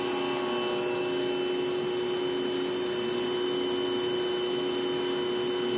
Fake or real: real